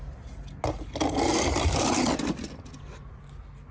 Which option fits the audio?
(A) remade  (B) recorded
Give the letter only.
B